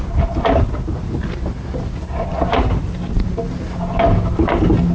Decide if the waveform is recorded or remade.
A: recorded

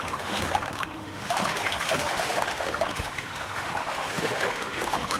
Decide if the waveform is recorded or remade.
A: remade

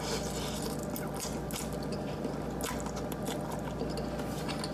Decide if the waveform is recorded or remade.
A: recorded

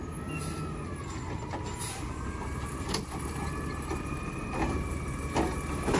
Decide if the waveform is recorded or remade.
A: recorded